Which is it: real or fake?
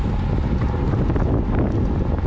real